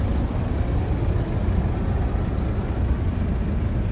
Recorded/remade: recorded